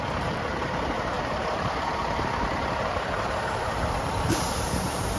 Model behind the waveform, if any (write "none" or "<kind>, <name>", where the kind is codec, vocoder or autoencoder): vocoder, BigVGAN v2